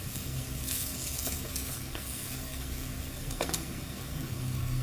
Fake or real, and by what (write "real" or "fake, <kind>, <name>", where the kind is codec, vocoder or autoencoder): fake, codec, SNAC